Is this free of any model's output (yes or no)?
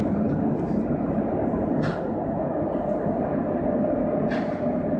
yes